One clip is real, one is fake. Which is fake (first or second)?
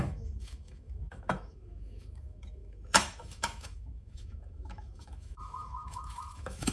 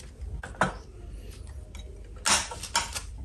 first